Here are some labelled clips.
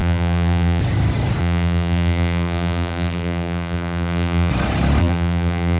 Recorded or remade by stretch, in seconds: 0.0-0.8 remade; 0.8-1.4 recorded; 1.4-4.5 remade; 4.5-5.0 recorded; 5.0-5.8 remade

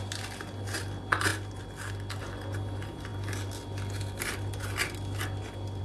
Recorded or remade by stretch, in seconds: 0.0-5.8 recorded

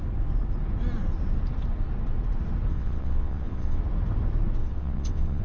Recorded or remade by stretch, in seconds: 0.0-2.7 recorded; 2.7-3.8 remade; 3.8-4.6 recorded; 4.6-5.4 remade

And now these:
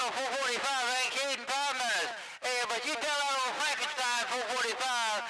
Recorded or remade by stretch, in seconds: 0.0-3.2 recorded; 3.2-4.7 remade; 4.7-5.3 recorded

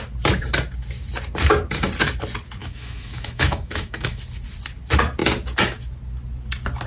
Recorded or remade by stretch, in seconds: 0.0-2.6 recorded; 2.6-4.2 remade; 4.2-6.9 recorded

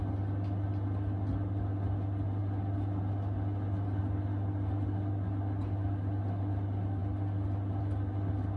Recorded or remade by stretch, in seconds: 0.0-8.6 recorded

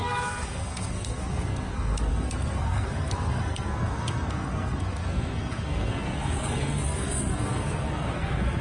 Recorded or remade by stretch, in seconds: 0.0-8.6 remade

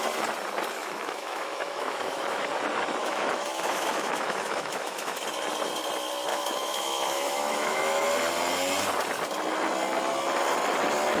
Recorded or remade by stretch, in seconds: 0.0-0.8 recorded; 0.8-2.5 remade; 2.5-3.0 recorded; 3.0-5.2 remade; 5.2-6.3 recorded; 6.3-8.1 remade; 8.1-11.2 recorded